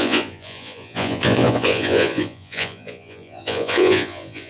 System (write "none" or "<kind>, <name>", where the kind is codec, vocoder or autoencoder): vocoder, Vocos